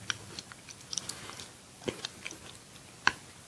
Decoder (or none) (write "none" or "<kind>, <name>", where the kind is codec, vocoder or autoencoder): none